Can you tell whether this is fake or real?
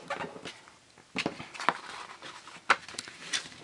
real